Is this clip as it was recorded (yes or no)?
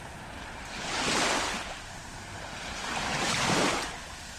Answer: no